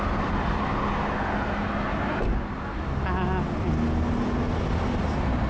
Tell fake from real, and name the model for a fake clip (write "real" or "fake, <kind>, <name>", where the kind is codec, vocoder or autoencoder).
real